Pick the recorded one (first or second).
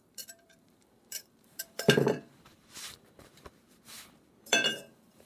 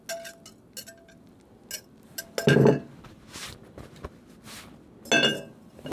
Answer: second